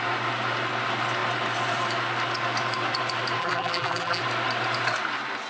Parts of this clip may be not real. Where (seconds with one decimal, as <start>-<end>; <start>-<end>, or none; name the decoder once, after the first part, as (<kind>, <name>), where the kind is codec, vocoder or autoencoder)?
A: 3.4-4.2 (vocoder, BigVGAN v2)